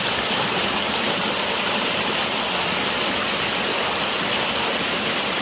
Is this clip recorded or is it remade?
recorded